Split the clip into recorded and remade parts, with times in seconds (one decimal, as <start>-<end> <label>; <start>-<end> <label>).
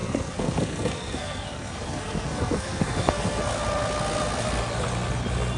0.0-3.4 remade; 3.4-5.6 recorded